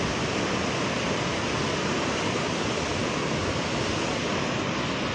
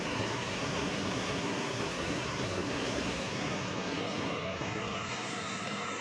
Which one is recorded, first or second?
first